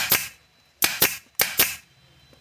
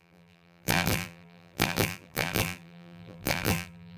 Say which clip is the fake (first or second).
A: second